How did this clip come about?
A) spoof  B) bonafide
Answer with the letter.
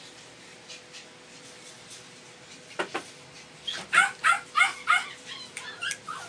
B